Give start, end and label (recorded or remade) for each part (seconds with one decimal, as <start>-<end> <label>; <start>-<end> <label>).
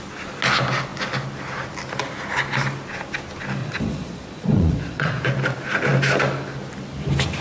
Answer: 0.0-3.6 recorded; 3.6-5.2 remade; 5.2-7.4 recorded